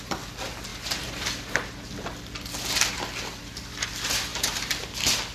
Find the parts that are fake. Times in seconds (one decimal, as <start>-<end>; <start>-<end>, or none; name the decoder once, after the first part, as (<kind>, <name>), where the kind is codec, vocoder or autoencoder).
4.3-4.8 (vocoder, BigVGAN v2)